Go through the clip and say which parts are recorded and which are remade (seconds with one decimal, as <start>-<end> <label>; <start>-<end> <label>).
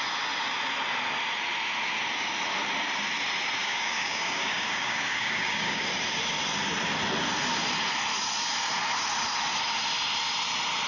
0.0-3.6 recorded; 3.6-5.8 remade; 5.8-10.9 recorded